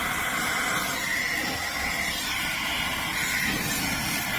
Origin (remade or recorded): recorded